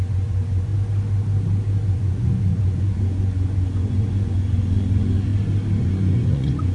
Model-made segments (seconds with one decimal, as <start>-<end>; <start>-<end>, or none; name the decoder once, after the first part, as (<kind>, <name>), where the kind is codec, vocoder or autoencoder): 0.0-0.7 (vocoder, Vocos); 1.9-5.3; 5.8-6.7